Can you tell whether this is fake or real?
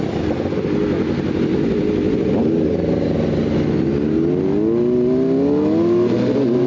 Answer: real